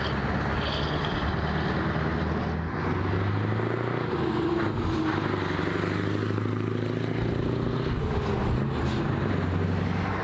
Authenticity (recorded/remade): recorded